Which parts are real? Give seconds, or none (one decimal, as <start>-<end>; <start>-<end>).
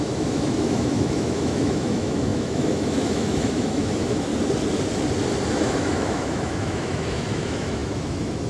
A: 4.3-5.5